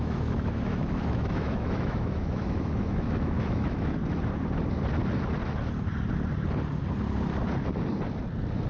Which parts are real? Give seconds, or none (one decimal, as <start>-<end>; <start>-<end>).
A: 4.0-8.7